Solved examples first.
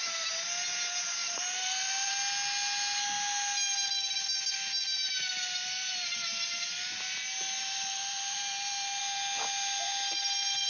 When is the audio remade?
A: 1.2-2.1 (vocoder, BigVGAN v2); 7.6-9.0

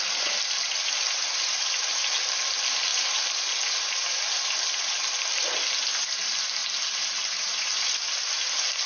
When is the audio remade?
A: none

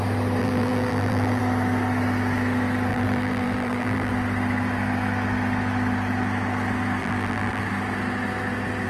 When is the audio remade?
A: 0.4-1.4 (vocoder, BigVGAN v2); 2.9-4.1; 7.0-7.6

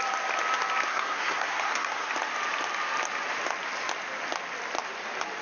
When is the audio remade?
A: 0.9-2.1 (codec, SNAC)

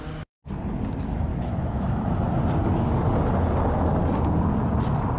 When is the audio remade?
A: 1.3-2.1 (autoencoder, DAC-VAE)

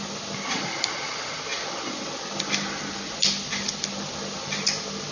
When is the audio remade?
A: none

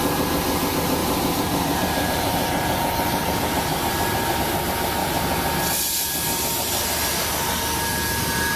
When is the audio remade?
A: 1.0-4.4 (vocoder, BigVGAN v2); 5.0-5.6